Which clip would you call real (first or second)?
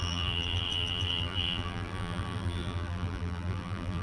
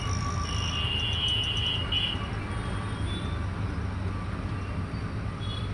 second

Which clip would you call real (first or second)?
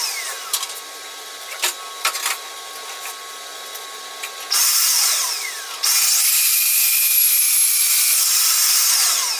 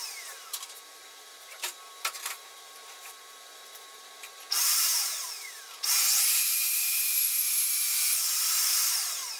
first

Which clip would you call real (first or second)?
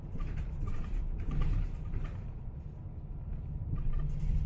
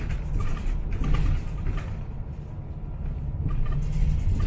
second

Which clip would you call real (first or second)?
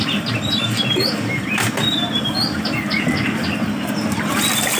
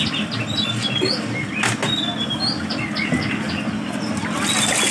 second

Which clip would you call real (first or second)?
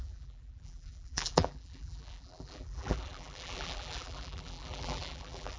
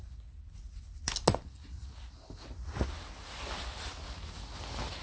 second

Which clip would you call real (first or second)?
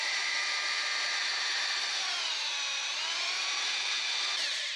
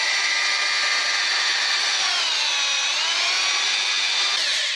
second